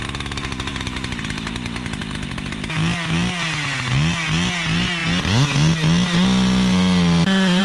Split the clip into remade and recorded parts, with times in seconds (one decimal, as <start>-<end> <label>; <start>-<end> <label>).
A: 0.0-7.6 recorded